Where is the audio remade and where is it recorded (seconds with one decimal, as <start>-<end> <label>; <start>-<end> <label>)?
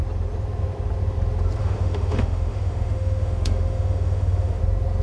0.0-1.6 recorded; 1.6-4.6 remade; 4.6-5.0 recorded